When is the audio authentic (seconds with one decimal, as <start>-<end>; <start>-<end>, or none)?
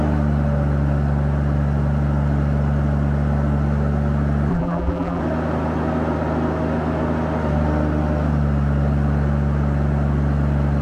0.0-4.5; 5.2-10.8